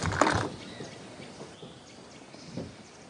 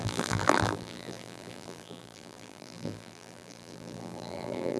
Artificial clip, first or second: second